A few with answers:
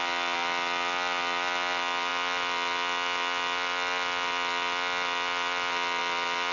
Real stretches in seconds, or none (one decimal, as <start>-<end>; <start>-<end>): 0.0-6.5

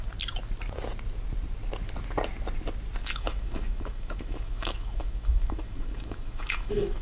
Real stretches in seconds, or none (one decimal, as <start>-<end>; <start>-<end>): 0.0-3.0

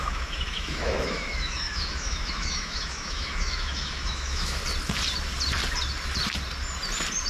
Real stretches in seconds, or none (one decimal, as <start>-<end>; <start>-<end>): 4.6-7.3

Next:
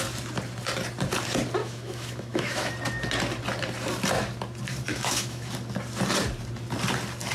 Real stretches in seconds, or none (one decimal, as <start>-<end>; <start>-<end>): 0.0-1.6; 2.7-4.9; 5.5-7.3